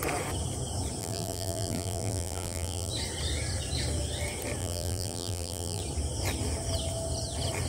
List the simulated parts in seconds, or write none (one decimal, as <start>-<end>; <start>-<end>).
1.0-2.9; 4.6-5.8